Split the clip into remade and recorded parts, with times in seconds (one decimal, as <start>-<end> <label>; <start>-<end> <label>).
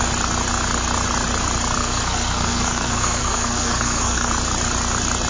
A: 0.0-1.8 recorded; 1.8-4.3 remade; 4.3-5.3 recorded